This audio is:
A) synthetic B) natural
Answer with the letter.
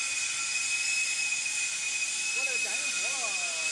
B